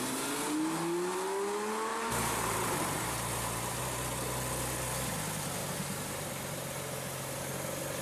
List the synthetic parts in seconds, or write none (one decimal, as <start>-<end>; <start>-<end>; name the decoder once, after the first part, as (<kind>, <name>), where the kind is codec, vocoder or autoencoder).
1.9-3.8 (vocoder, BigVGAN v2); 5.6-6.3